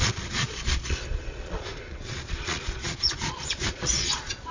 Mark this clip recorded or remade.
remade